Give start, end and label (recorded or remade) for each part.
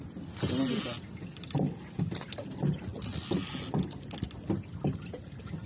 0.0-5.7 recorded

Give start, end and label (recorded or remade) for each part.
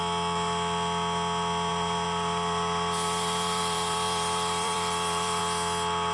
0.0-1.7 recorded; 1.7-5.4 remade; 5.4-6.1 recorded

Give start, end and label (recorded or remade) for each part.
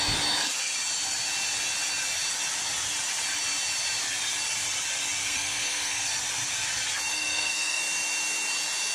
0.0-5.2 recorded; 5.2-6.1 remade; 6.1-7.1 recorded; 7.1-7.8 remade; 7.8-8.9 recorded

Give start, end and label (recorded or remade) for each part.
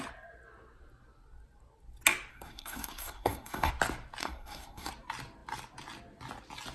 0.0-2.3 recorded; 2.3-3.7 remade; 3.7-4.2 recorded; 4.2-4.9 remade; 4.9-6.7 recorded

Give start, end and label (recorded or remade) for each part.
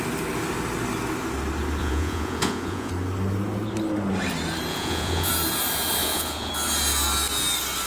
0.0-1.8 recorded; 1.8-2.9 remade; 2.9-4.7 recorded; 4.7-5.3 remade; 5.3-6.0 recorded; 6.0-6.5 remade; 6.5-7.9 recorded